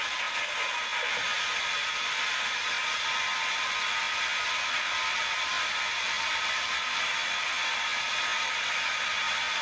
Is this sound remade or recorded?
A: recorded